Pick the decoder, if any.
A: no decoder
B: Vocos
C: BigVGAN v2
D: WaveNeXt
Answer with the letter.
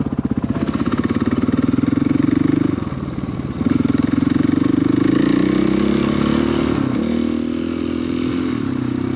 A